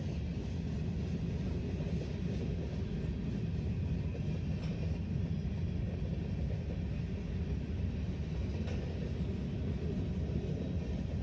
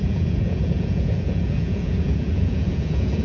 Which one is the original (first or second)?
first